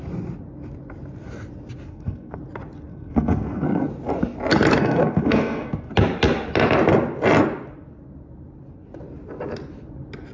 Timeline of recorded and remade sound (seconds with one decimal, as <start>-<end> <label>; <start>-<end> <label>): 0.0-1.9 recorded; 1.9-2.4 remade; 2.4-2.9 recorded; 2.9-3.9 remade; 3.9-4.8 recorded; 4.8-5.9 remade; 5.9-10.3 recorded